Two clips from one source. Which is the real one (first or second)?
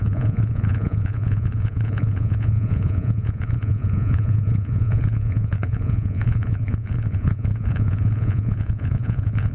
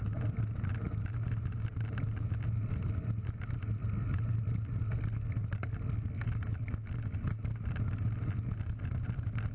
second